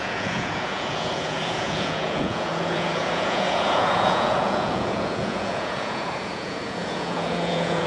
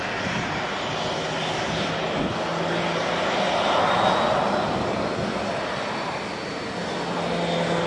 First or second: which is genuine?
second